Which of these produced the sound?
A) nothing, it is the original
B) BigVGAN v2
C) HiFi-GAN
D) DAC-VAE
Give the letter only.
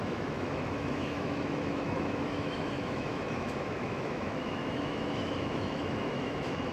D